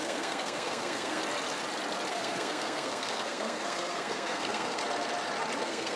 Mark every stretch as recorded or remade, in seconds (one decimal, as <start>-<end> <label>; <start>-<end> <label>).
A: 0.0-1.2 remade; 1.2-2.1 recorded; 2.1-4.8 remade; 4.8-5.6 recorded; 5.6-6.0 remade